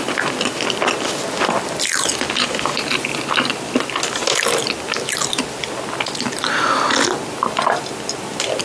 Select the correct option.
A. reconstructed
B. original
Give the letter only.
B